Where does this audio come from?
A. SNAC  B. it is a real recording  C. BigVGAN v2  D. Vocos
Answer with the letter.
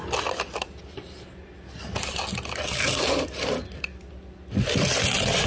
B